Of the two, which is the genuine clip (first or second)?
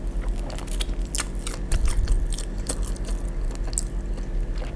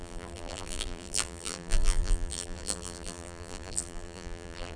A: first